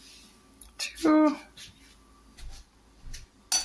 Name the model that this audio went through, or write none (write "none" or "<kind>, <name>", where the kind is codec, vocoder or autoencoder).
none